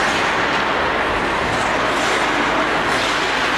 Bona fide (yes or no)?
yes